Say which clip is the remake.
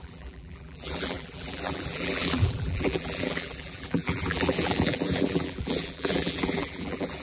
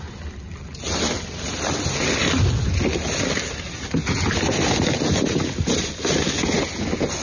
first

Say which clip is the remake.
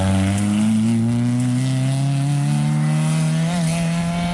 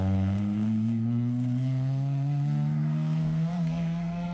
second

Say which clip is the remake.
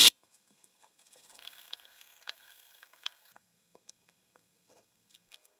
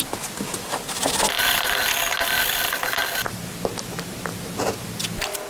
first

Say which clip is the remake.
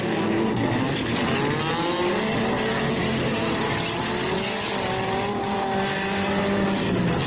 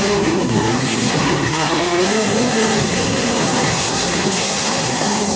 second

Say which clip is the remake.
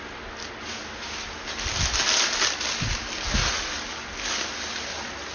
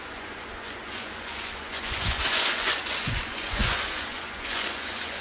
second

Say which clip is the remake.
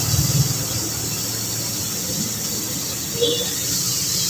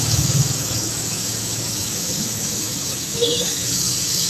second